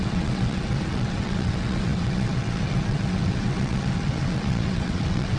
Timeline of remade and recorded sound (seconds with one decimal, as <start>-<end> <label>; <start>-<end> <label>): 0.0-5.4 remade